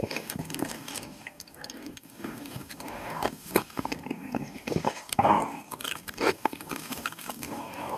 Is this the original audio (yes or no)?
no